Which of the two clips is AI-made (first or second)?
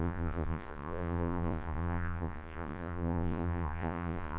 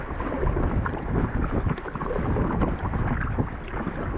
first